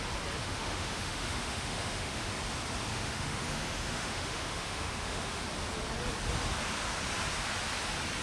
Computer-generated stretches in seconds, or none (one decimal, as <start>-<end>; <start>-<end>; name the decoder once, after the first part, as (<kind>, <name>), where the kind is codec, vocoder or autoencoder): 0.4-2.3 (autoencoder, DAC-VAE); 2.9-5.4